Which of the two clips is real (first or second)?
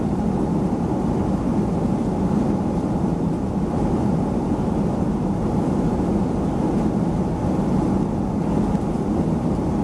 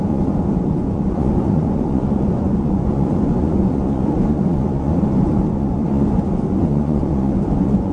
first